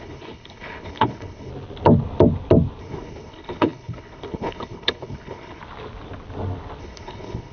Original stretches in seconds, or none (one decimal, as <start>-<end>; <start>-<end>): 1.5-2.8; 5.6-6.8